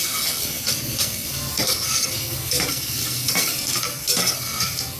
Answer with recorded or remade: remade